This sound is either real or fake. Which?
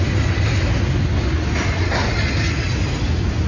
real